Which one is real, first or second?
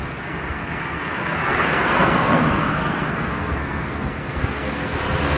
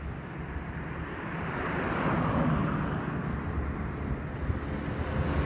second